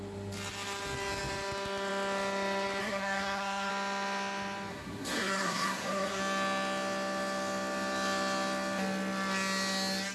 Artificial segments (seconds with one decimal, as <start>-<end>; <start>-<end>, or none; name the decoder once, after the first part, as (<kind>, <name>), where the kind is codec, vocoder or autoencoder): 2.8-3.7 (codec, SNAC); 4.7-6.2